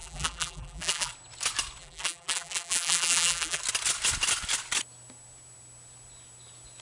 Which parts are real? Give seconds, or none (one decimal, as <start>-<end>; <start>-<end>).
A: 1.1-1.8; 3.6-6.8

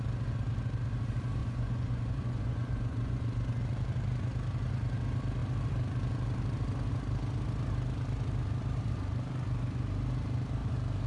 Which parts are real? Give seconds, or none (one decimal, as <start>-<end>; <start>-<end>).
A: 0.0-1.4; 3.6-11.1

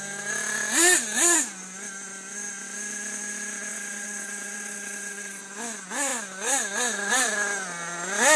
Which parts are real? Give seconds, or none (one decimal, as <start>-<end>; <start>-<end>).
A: 0.0-3.7; 5.4-8.4

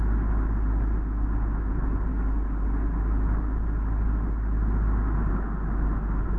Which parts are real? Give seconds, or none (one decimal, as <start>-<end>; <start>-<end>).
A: 0.0-6.4

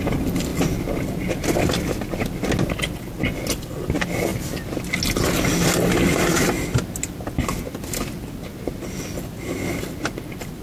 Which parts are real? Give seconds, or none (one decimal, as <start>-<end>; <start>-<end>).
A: 0.0-10.6

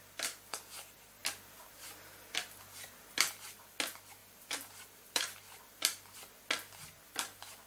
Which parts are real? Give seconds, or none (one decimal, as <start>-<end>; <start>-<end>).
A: 0.0-4.2; 5.6-7.7

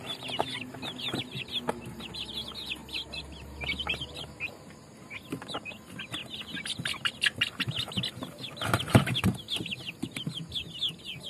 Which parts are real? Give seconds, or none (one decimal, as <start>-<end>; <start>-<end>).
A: 0.0-11.3

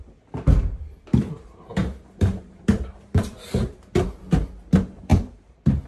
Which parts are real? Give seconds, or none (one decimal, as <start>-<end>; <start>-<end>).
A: 0.0-1.8; 3.7-5.1